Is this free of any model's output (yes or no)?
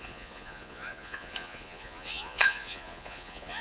no